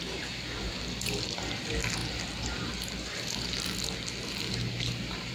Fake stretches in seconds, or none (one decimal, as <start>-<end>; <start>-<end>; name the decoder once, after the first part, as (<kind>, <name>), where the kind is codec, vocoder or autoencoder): none